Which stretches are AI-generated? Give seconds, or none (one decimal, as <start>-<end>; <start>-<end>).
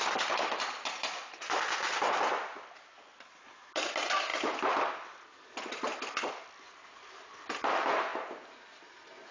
none